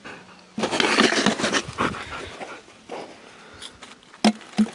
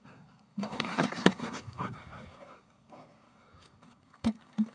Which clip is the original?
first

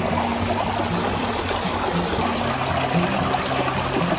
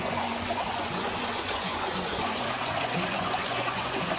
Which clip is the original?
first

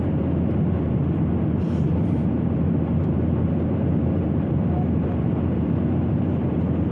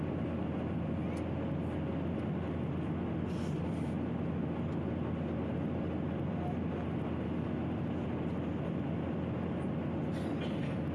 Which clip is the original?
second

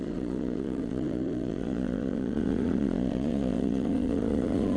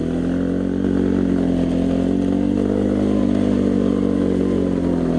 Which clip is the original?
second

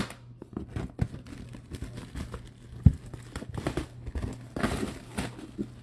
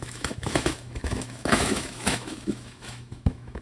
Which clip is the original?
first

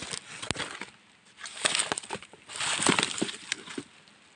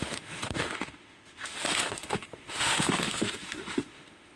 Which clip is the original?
first